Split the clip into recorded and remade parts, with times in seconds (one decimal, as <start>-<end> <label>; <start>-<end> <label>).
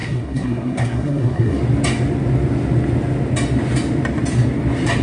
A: 0.0-1.6 remade; 1.6-5.0 recorded